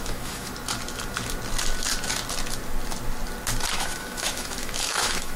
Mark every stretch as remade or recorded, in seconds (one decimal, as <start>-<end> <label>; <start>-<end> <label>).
0.0-0.5 remade; 0.5-3.7 recorded; 3.7-5.4 remade

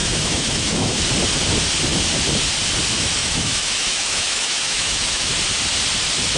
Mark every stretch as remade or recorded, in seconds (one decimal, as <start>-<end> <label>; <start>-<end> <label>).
0.0-1.0 remade; 1.0-3.2 recorded; 3.2-5.3 remade; 5.3-6.4 recorded

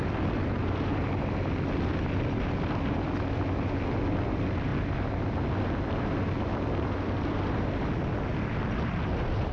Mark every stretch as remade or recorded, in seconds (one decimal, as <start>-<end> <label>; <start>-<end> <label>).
0.0-9.5 recorded

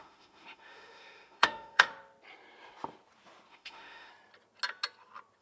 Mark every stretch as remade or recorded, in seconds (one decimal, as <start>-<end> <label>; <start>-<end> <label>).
0.0-1.9 remade; 1.9-3.5 recorded; 3.5-4.1 remade; 4.1-5.4 recorded

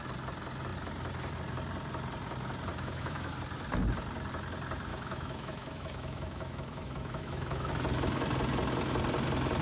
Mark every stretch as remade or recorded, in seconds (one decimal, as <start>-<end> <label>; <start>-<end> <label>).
0.0-2.7 recorded; 2.7-3.3 remade; 3.3-4.9 recorded; 4.9-7.7 remade; 7.7-9.6 recorded